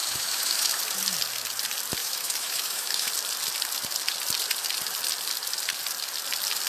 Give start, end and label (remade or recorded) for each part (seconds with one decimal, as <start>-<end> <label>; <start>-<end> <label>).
0.0-0.8 remade; 0.8-2.0 recorded; 2.0-3.1 remade; 3.1-6.7 recorded